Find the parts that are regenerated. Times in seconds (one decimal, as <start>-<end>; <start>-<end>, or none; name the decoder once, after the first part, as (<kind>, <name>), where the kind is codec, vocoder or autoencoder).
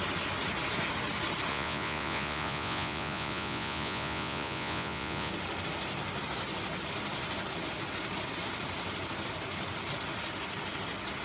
1.5-5.3 (vocoder, Vocos)